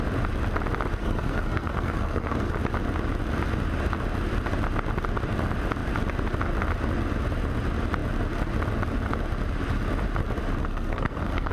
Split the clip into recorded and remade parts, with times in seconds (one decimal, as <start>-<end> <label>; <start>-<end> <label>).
0.0-1.0 recorded; 1.0-2.5 remade; 2.5-10.6 recorded; 10.6-11.5 remade